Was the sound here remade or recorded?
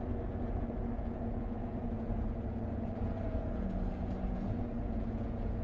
remade